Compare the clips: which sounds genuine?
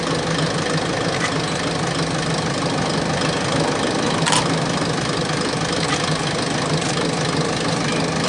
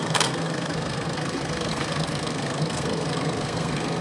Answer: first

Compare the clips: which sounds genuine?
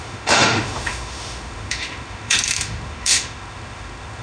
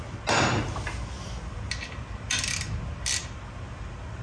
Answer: second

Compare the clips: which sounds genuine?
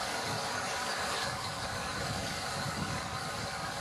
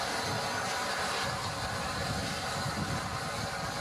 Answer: second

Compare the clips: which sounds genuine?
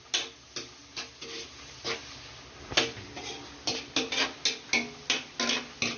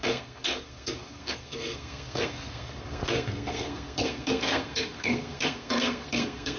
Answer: first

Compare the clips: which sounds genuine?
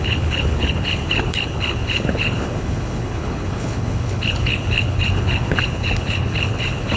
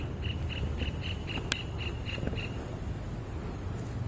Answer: second